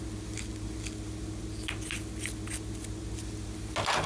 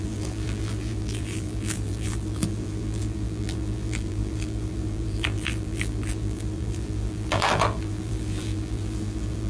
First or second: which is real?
first